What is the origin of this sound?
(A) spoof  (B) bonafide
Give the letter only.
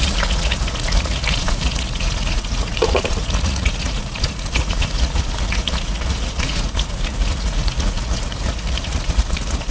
A